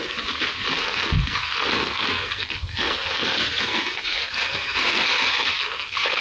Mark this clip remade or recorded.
remade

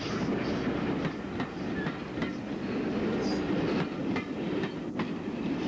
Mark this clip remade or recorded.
recorded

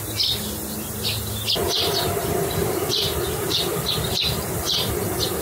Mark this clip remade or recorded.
recorded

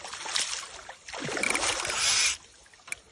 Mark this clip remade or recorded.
recorded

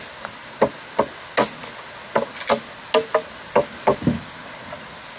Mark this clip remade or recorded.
recorded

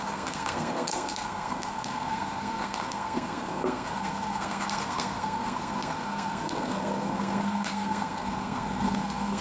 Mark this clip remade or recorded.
remade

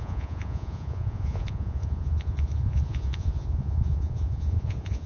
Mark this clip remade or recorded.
remade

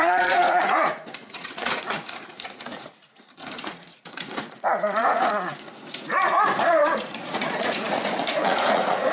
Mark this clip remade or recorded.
remade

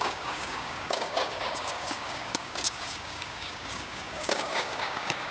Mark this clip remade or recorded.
remade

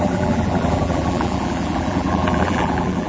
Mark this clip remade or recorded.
remade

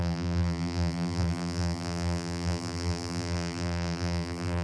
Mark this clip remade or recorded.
remade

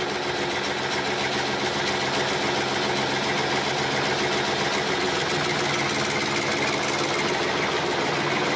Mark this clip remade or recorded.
recorded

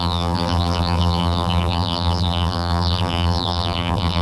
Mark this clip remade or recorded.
remade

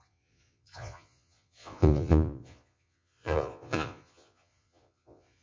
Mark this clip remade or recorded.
remade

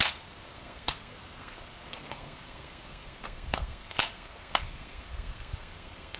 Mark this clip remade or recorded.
remade